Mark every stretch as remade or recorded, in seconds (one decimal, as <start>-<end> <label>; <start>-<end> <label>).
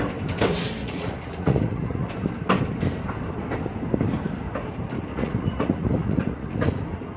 0.0-0.8 recorded; 0.8-2.1 remade; 2.1-5.1 recorded; 5.1-6.8 remade; 6.8-7.2 recorded